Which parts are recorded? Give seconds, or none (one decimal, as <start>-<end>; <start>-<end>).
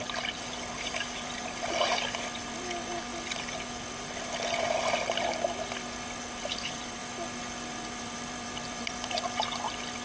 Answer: 3.1-6.4; 7.0-7.7